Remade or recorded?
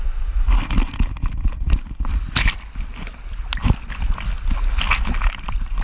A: recorded